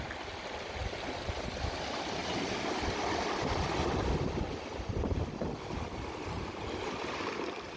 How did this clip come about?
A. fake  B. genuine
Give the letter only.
B